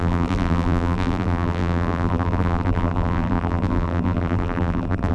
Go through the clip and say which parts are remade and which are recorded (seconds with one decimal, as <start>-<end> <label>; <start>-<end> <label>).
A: 0.0-5.1 remade